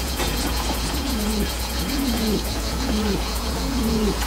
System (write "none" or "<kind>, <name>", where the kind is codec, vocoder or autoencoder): vocoder, Vocos